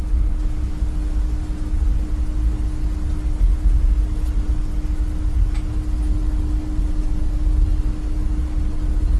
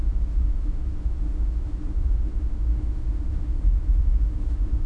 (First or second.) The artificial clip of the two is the second